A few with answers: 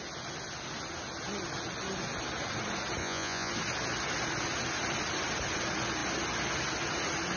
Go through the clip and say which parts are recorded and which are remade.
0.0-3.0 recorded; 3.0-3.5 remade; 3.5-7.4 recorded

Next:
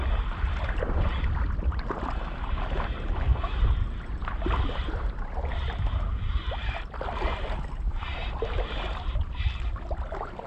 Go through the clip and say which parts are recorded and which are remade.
0.0-10.5 recorded

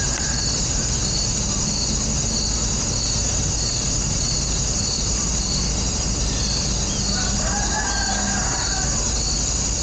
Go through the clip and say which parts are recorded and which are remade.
0.0-9.8 recorded

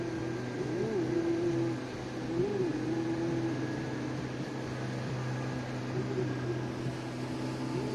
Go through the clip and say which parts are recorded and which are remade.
0.0-7.9 recorded

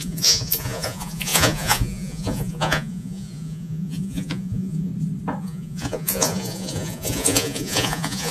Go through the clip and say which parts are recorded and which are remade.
0.0-4.9 remade; 4.9-5.4 recorded; 5.4-8.3 remade

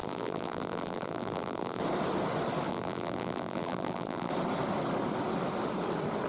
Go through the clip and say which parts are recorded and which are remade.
0.0-1.8 remade; 1.8-2.7 recorded; 2.7-4.3 remade; 4.3-6.3 recorded

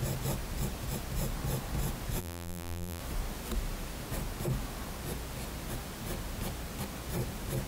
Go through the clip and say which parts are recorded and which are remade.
0.0-2.2 recorded; 2.2-3.0 remade; 3.0-7.7 recorded

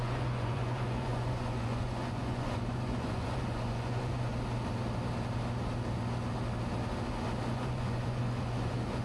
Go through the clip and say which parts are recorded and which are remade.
0.0-4.3 remade; 4.3-7.5 recorded; 7.5-9.0 remade